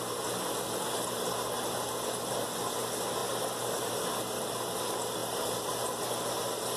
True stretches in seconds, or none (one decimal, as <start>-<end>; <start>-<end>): 0.0-6.8